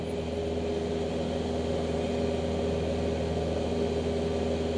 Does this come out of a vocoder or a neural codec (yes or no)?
no